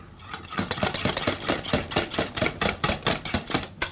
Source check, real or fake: real